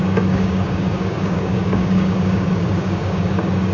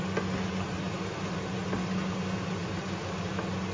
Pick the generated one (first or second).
first